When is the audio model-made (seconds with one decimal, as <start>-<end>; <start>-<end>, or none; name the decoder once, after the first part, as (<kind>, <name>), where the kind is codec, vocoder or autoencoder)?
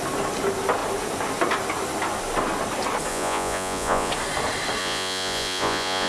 3.1-4.1 (vocoder, Vocos); 4.8-6.1